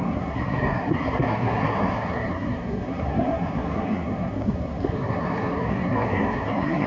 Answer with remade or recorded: remade